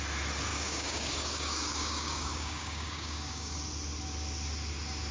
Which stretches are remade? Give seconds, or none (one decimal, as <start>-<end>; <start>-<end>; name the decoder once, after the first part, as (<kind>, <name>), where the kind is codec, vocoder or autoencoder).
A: 0.5-3.6 (codec, DAC)